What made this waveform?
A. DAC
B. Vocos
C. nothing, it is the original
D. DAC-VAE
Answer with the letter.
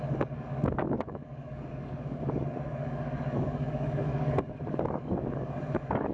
A